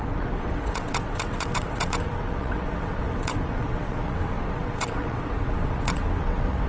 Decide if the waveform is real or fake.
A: fake